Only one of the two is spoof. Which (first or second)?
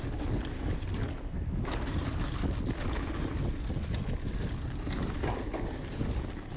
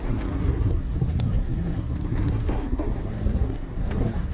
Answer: second